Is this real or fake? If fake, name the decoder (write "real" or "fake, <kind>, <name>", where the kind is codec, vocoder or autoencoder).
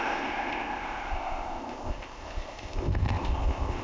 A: fake, codec, ZipCodec